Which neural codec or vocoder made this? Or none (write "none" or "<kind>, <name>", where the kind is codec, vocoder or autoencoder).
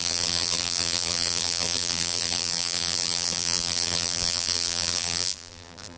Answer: vocoder, BigVGAN v2